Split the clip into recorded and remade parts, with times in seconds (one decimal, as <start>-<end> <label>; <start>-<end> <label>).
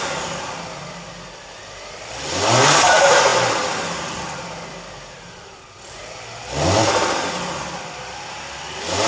0.0-9.1 recorded